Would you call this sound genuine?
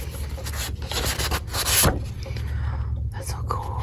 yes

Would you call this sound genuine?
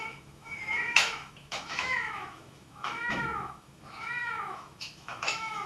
no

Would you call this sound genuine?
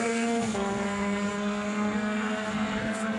no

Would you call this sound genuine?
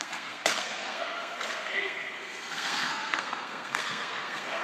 no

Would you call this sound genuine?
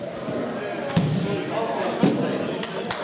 yes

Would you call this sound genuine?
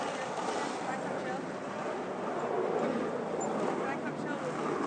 yes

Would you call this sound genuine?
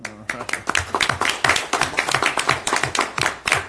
yes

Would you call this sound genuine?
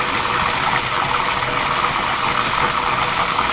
yes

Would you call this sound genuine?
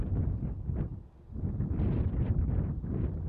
yes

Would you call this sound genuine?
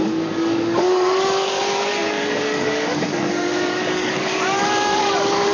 no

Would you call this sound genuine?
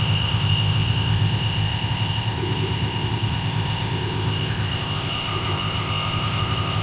no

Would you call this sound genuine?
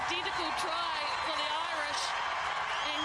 yes